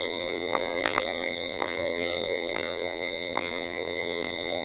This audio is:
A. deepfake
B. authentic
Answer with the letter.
A